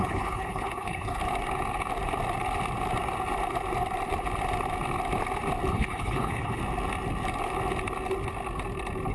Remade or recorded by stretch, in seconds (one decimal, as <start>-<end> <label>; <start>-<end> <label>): 0.0-1.2 remade; 1.2-5.7 recorded; 5.7-6.6 remade; 6.6-9.1 recorded